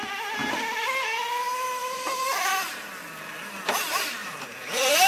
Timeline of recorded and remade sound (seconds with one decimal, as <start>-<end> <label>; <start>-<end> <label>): 0.0-0.4 recorded; 0.4-0.9 remade; 0.9-1.8 recorded; 1.8-2.5 remade; 2.5-4.2 recorded; 4.2-5.1 remade